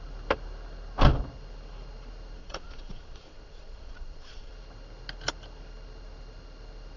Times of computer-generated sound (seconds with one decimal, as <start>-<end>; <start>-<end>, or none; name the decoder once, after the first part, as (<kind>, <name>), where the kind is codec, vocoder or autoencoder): 2.4-4.5 (vocoder, Vocos)